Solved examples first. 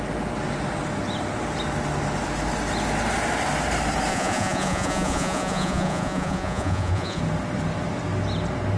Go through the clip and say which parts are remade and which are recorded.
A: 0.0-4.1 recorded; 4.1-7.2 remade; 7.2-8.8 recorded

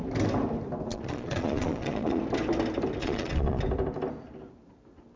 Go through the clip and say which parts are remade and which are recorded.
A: 0.0-0.9 recorded; 0.9-2.2 remade; 2.2-3.0 recorded; 3.0-3.6 remade; 3.6-5.2 recorded

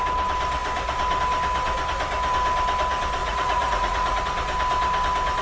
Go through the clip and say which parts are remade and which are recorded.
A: 0.0-3.2 recorded; 3.2-4.2 remade; 4.2-5.4 recorded

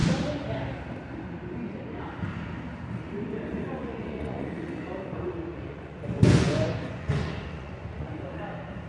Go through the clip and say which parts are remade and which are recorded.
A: 0.0-3.5 recorded; 3.5-8.4 remade; 8.4-8.9 recorded

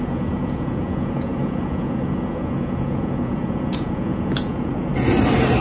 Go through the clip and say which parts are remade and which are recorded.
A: 0.0-4.9 remade; 4.9-5.6 recorded

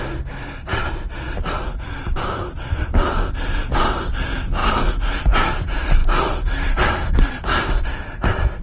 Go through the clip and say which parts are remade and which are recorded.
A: 0.0-8.6 recorded

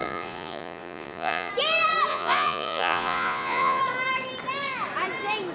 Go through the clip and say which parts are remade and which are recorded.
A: 0.0-1.5 remade; 1.5-2.1 recorded; 2.1-3.8 remade; 3.8-5.5 recorded